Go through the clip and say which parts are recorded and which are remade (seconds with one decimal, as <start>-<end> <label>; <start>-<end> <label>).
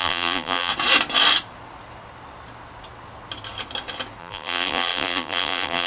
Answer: 0.0-0.7 remade; 0.7-4.2 recorded; 4.2-5.9 remade